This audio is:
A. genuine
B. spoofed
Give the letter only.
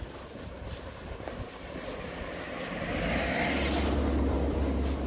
A